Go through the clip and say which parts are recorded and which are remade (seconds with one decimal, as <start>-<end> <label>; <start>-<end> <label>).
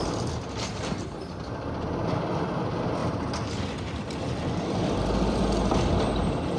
0.0-6.6 remade